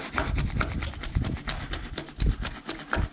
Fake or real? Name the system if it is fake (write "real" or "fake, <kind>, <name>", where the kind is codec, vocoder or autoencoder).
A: real